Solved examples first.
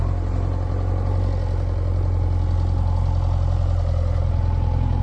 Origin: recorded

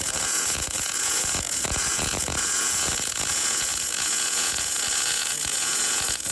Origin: remade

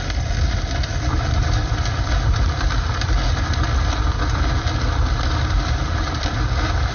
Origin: recorded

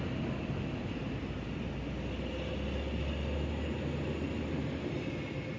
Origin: recorded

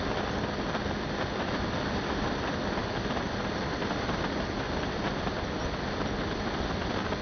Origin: recorded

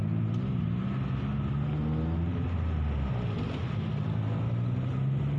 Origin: recorded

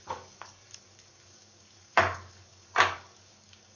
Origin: remade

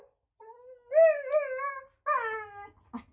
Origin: recorded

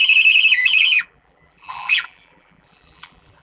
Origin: remade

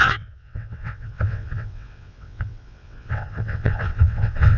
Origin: remade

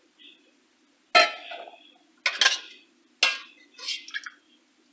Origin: recorded